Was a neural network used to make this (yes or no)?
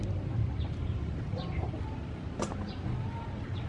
no